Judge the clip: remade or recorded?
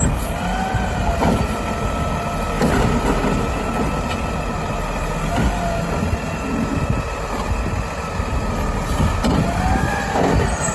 recorded